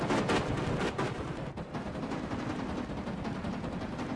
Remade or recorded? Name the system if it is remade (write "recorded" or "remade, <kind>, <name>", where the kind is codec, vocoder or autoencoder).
recorded